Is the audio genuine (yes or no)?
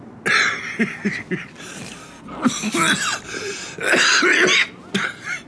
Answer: yes